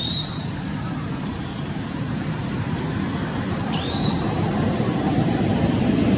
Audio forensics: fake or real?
fake